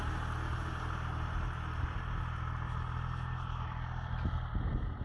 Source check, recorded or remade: recorded